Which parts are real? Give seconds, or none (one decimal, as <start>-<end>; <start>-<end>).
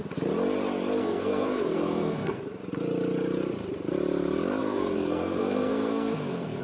0.0-1.0; 2.4-4.6